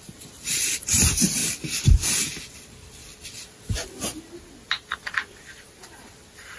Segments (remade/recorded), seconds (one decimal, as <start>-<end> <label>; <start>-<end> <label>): 0.0-1.4 remade; 1.4-2.5 recorded; 2.5-3.0 remade; 3.0-5.0 recorded; 5.0-6.6 remade